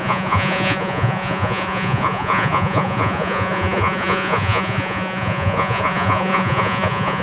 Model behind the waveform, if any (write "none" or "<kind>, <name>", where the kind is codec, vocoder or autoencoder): vocoder, Vocos